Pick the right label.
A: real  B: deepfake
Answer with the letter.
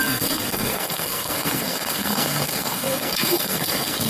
B